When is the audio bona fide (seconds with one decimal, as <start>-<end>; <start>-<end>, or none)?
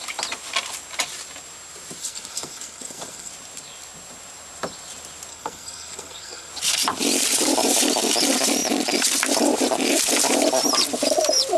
0.0-2.0; 3.3-5.3; 6.5-11.6